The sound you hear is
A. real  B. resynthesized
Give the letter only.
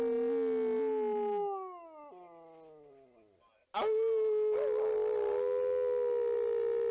A